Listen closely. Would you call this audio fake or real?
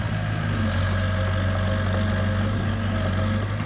real